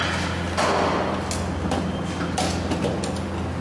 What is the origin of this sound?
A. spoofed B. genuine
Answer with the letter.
B